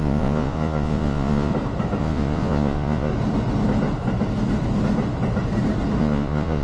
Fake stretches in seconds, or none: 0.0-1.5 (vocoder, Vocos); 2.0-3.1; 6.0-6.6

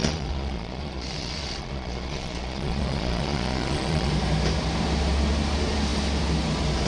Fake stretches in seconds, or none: 0.0-4.1 (vocoder, Vocos)

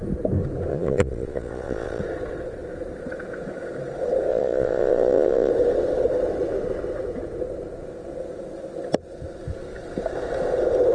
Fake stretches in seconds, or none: 0.7-2.0 (vocoder, Vocos); 4.3-5.5

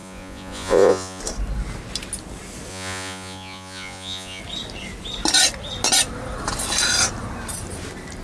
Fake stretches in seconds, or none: 0.0-1.2 (vocoder, Vocos); 2.7-4.4